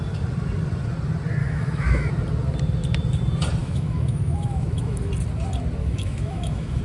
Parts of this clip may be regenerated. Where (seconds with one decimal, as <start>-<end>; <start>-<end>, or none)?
1.4-2.1; 3.6-5.1; 5.8-6.8